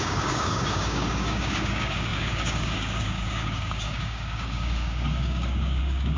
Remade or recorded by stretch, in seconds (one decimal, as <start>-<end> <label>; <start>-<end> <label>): 0.0-6.2 remade